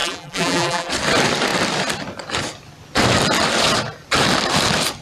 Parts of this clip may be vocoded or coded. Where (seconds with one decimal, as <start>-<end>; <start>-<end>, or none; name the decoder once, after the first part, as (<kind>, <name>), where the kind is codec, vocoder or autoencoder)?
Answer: 0.0-0.9 (vocoder, BigVGAN v2)